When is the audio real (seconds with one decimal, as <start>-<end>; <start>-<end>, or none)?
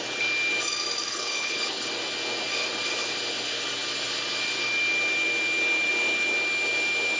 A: 0.0-1.1; 1.9-7.2